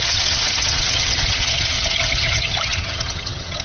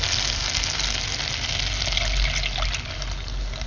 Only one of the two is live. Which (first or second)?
second